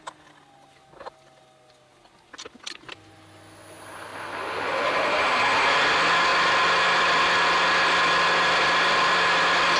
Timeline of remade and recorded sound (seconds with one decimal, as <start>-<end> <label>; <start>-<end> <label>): 0.0-9.8 recorded